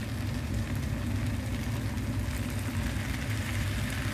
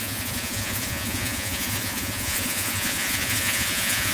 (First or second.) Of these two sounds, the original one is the first